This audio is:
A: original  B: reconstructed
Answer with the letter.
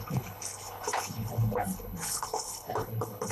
B